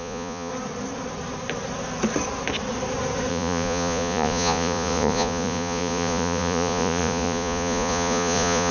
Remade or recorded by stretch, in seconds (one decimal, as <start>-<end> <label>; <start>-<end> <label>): 0.0-0.5 remade; 0.5-3.3 recorded; 3.3-8.7 remade

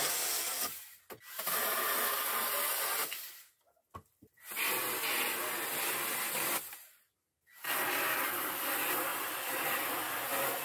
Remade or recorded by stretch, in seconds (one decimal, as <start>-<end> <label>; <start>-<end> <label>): 0.0-9.1 recorded; 9.1-9.7 remade; 9.7-10.6 recorded

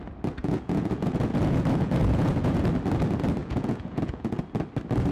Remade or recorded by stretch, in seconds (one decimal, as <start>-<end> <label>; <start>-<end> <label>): 0.0-0.4 recorded; 0.4-2.6 remade; 2.6-3.4 recorded; 3.4-4.4 remade; 4.4-5.1 recorded

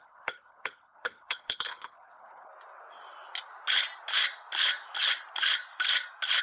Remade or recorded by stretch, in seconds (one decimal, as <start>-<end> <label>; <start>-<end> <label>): 0.0-2.5 remade; 2.5-6.4 recorded

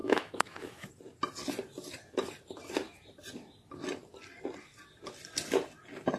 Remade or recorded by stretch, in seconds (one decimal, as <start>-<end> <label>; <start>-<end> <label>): 0.0-0.9 remade; 0.9-6.2 recorded